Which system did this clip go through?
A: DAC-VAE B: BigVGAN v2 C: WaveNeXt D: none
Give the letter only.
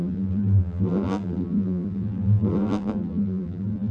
B